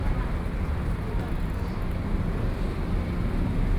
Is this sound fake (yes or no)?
no